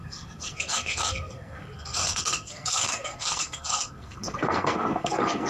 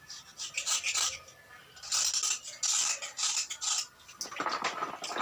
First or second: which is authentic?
second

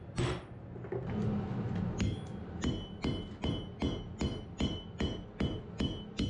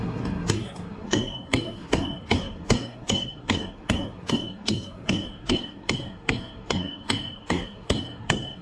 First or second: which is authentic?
first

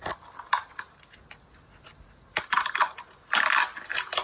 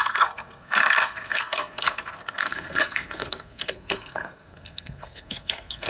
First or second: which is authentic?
first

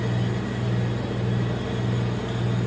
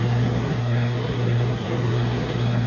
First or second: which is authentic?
first